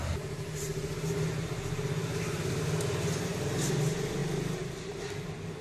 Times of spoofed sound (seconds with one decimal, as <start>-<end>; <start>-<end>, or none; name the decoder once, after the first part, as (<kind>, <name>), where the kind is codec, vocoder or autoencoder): none